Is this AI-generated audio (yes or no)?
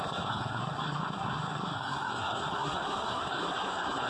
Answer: yes